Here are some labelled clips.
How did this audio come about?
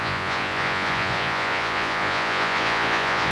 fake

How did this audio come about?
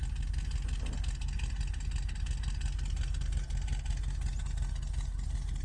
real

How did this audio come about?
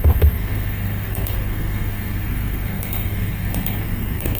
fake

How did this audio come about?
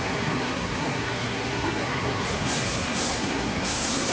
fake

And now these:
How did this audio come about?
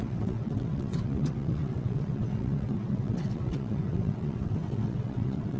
fake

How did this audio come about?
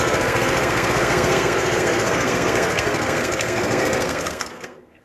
fake